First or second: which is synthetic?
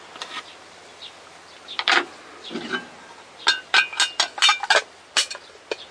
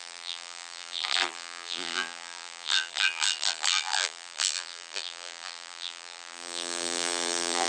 second